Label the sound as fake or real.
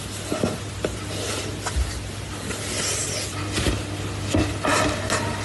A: real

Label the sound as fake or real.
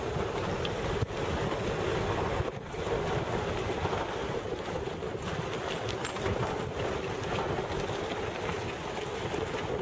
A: real